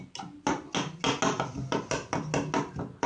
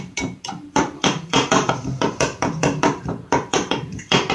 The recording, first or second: first